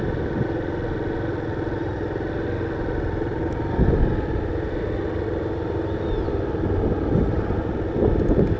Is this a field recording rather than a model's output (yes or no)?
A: yes